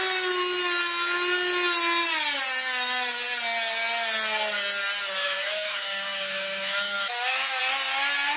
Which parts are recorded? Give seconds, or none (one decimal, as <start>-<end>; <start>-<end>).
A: 0.0-5.2; 7.6-8.4